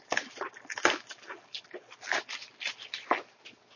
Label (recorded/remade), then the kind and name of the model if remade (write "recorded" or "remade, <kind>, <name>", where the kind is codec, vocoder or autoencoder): recorded